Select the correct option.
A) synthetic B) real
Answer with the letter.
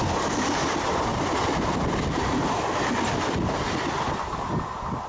B